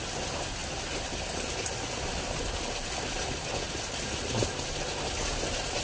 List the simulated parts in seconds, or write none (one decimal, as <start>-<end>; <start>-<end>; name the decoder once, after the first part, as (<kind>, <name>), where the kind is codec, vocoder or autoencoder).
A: none